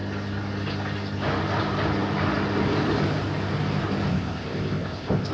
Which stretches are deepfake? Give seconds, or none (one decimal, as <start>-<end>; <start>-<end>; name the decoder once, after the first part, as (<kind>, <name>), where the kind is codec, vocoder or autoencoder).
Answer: 4.1-5.3 (codec, ZipCodec)